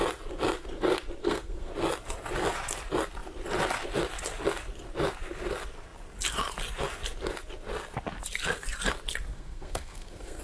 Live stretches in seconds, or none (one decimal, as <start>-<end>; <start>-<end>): 0.0-1.2; 1.7-9.3